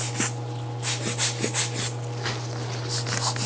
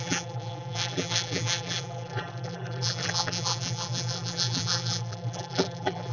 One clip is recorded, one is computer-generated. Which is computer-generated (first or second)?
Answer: second